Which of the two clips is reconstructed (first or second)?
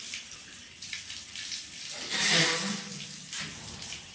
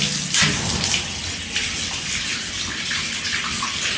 first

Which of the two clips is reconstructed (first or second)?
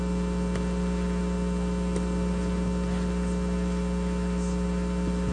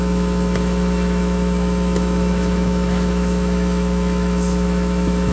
second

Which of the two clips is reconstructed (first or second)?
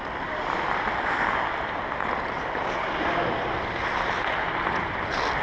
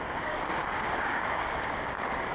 second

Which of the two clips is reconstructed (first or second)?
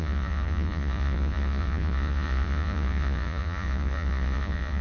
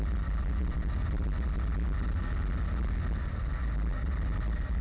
first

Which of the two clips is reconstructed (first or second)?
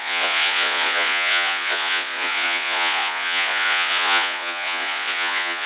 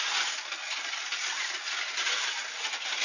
first